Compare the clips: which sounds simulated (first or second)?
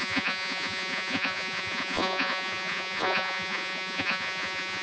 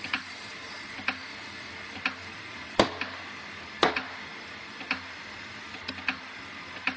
first